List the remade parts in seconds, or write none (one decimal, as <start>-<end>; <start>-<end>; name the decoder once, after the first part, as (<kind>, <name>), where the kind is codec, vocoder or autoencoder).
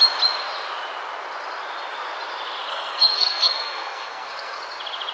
2.7-4.6 (codec, SNAC)